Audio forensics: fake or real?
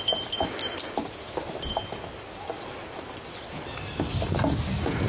real